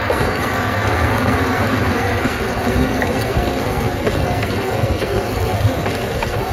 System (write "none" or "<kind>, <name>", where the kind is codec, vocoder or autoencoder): codec, SNAC